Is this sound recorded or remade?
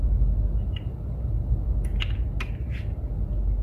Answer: recorded